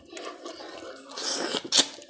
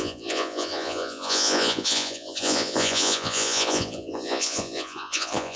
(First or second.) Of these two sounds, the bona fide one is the first